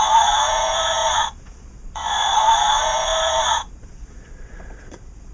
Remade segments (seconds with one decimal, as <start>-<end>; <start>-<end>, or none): 0.0-5.3